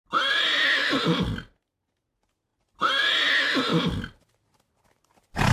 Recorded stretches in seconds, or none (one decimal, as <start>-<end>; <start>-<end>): 0.0-0.8; 1.9-3.7; 4.7-5.5